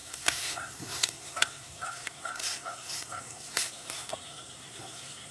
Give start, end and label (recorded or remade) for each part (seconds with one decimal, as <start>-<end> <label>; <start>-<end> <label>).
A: 0.0-5.3 remade